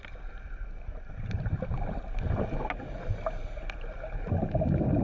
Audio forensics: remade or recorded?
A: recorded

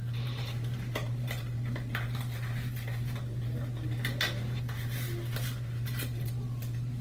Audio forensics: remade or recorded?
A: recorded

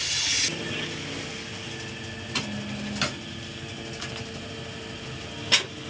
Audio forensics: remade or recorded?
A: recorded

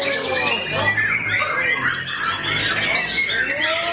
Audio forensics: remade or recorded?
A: recorded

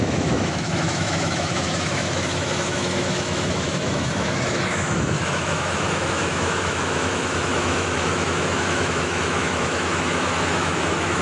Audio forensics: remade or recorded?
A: remade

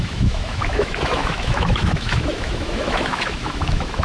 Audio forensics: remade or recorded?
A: remade